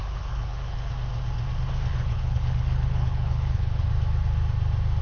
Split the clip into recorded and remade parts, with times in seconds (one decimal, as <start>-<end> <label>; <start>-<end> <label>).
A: 0.0-0.9 remade; 0.9-1.9 recorded; 1.9-3.9 remade; 3.9-5.0 recorded